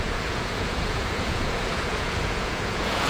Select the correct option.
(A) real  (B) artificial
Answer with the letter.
B